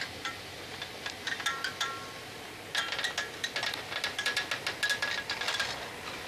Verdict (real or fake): real